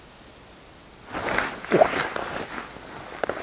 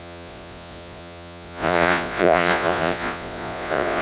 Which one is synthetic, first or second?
second